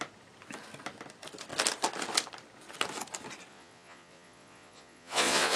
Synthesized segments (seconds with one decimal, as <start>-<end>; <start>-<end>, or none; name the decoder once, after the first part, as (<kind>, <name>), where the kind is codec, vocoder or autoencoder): 3.5-5.6 (vocoder, Vocos)